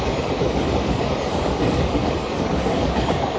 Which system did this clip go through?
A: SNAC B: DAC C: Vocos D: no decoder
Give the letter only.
B